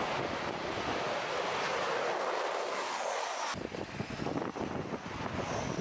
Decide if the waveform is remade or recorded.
recorded